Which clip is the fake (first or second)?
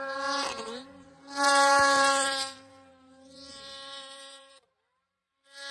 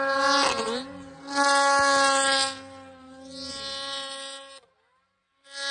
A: first